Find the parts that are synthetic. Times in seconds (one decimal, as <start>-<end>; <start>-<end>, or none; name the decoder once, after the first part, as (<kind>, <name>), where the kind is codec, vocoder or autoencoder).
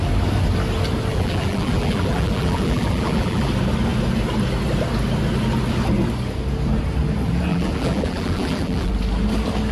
1.1-3.5 (vocoder, BigVGAN v2); 7.5-8.9